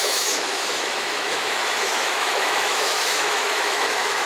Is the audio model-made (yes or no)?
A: yes